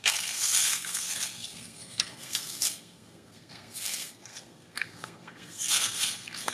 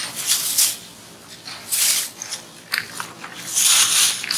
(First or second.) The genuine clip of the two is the second